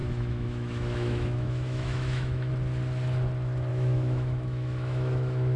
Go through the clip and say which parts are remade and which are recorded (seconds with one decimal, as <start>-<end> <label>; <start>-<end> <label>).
0.0-2.5 remade; 2.5-3.7 recorded; 3.7-5.6 remade